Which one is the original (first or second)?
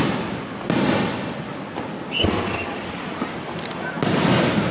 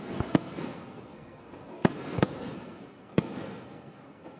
first